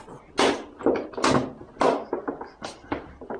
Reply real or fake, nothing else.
real